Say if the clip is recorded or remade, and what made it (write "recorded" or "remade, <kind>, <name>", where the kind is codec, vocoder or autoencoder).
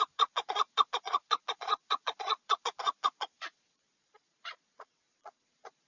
remade, vocoder, Vocos